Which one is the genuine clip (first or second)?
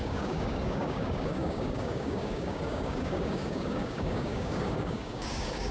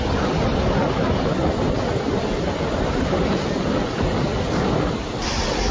second